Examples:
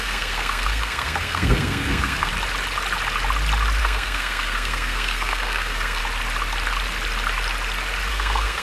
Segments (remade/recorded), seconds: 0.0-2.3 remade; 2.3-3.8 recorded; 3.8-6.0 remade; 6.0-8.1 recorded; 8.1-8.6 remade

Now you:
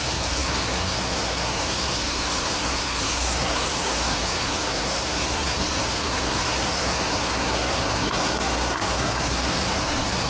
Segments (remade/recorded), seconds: 0.0-10.3 remade

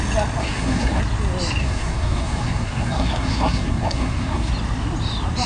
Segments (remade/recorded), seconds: 0.0-0.4 recorded; 0.4-1.0 remade; 1.0-1.6 recorded; 1.6-4.5 remade; 4.5-5.5 recorded

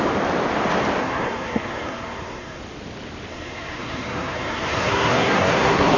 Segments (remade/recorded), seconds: 0.0-1.0 recorded; 1.0-2.6 remade; 2.6-3.3 recorded; 3.3-6.0 remade

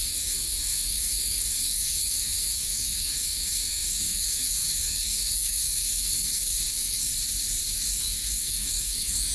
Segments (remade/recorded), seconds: 0.0-7.1 remade; 7.1-7.9 recorded; 7.9-9.3 remade